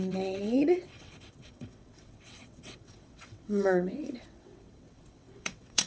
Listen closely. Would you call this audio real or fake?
fake